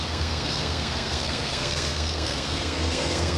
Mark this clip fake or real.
fake